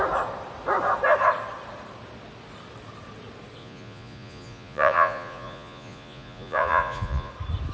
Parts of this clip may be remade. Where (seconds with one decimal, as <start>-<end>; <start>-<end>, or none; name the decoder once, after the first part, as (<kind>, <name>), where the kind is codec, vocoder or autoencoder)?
3.6-7.3 (vocoder, Vocos)